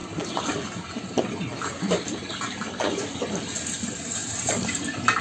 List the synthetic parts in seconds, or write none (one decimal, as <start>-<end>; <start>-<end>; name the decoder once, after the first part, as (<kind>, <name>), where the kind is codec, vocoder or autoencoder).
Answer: none